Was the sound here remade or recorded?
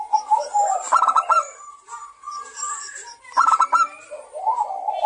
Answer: remade